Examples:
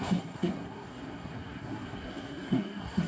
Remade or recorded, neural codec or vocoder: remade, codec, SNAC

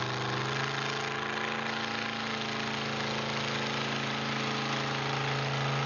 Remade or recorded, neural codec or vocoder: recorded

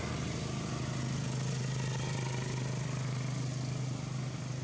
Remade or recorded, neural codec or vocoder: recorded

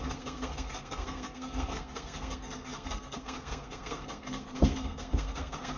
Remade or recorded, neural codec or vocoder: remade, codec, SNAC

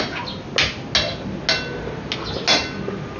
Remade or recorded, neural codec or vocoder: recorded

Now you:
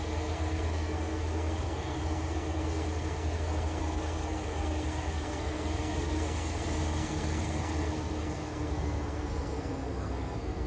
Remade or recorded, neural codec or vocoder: remade, codec, SNAC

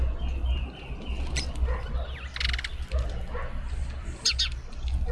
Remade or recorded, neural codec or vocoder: recorded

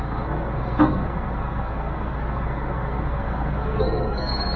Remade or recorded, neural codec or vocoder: remade, codec, SNAC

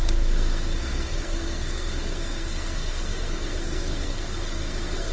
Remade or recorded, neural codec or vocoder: remade, codec, SNAC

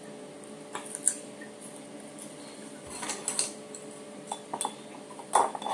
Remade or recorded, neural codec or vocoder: recorded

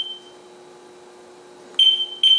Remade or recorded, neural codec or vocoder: recorded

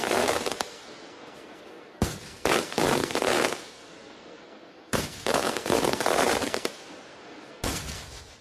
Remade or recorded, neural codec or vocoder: remade, codec, SNAC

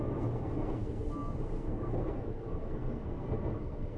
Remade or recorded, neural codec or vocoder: remade, codec, SNAC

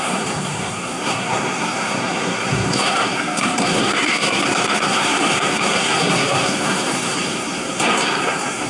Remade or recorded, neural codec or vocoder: remade, codec, SNAC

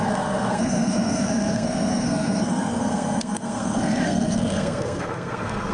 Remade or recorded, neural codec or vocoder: remade, codec, SNAC